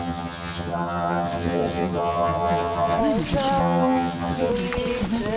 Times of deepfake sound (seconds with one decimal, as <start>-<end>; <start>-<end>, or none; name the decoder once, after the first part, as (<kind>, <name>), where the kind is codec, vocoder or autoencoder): 0.0-3.0 (vocoder, HiFi-GAN); 3.6-4.5